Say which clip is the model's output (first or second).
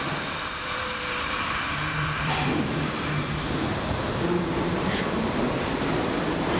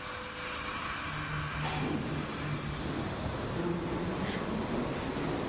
first